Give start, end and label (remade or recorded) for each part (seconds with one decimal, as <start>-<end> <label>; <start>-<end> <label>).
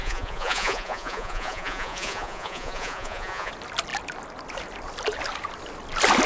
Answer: 0.0-3.5 remade; 3.5-6.3 recorded